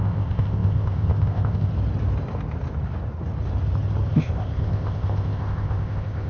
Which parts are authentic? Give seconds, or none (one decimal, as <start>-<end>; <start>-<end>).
1.7-4.1